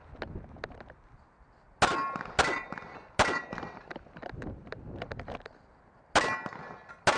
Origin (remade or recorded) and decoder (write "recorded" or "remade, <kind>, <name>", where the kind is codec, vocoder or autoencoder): recorded